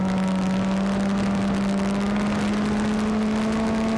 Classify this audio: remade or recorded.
recorded